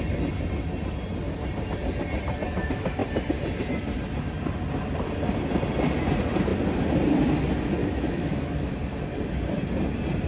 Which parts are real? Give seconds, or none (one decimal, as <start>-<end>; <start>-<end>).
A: 0.0-7.8; 8.7-10.3